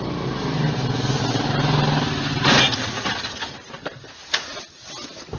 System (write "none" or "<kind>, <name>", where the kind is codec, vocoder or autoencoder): none